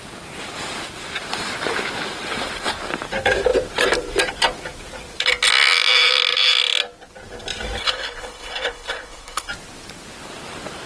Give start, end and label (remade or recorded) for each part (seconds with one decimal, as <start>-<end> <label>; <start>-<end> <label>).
0.0-7.8 recorded; 7.8-9.5 remade; 9.5-10.9 recorded